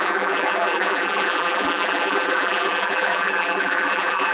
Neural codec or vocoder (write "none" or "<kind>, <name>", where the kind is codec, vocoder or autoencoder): vocoder, BigVGAN v2